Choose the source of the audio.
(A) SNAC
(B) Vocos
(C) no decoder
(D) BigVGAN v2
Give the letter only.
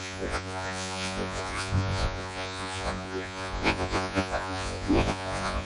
B